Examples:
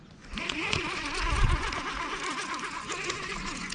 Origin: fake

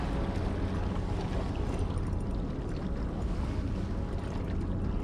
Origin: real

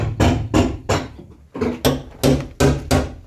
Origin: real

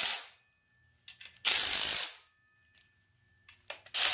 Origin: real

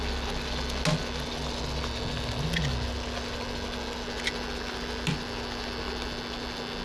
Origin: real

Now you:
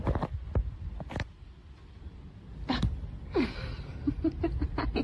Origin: real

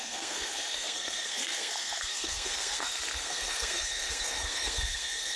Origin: fake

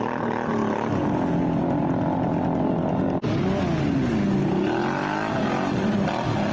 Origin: real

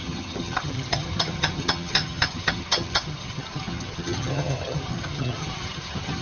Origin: fake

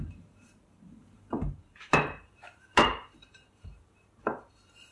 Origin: fake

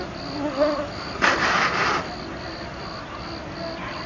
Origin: real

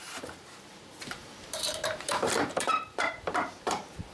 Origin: fake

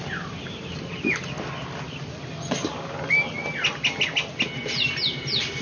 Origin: real